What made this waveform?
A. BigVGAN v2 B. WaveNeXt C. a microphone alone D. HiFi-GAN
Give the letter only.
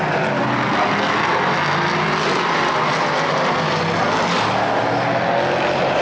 C